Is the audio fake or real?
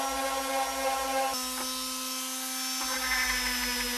real